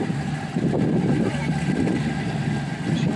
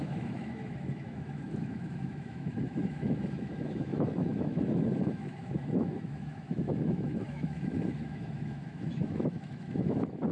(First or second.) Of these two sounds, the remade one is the second